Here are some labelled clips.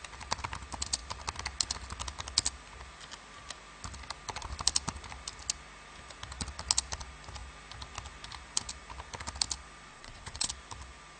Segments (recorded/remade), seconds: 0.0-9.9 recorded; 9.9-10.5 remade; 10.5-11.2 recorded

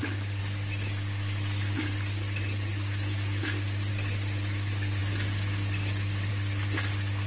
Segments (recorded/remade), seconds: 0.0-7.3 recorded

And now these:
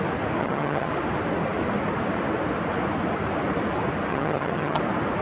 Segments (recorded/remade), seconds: 0.0-0.4 recorded; 0.4-0.9 remade; 0.9-4.1 recorded; 4.1-4.8 remade; 4.8-5.2 recorded

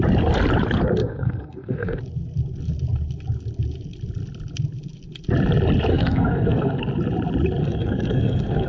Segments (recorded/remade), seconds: 0.0-1.0 recorded; 1.0-2.0 remade; 2.0-5.9 recorded; 5.9-6.8 remade; 6.8-7.6 recorded; 7.6-8.7 remade